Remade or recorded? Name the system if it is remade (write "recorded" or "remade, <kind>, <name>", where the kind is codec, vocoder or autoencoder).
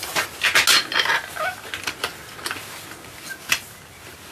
recorded